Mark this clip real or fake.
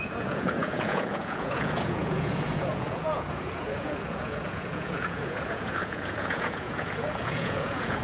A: fake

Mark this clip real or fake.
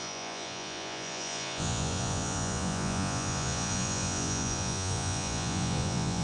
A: fake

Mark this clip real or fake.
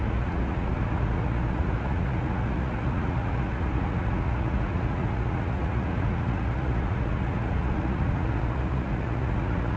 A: fake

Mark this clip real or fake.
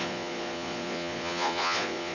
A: fake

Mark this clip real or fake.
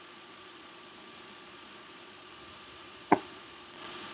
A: fake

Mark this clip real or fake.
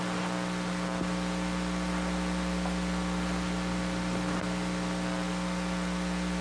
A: real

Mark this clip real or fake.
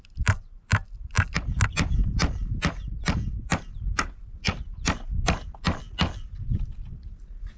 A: real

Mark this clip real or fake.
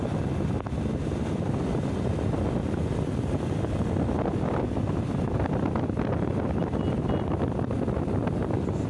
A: real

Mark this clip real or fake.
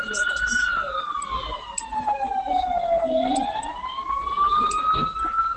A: real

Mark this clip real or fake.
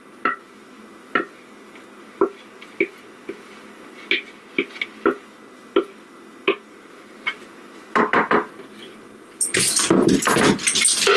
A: real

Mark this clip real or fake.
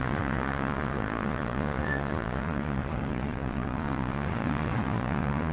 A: fake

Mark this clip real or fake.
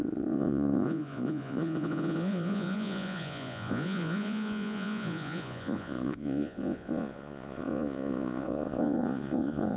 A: fake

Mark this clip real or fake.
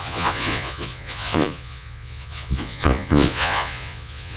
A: fake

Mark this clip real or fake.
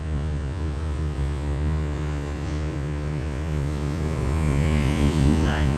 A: fake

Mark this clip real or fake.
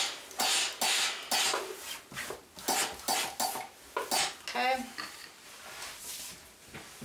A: real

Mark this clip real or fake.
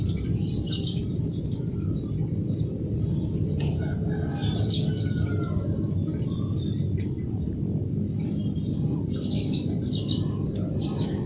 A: real